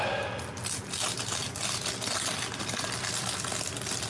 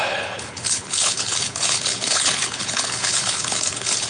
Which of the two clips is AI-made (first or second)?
second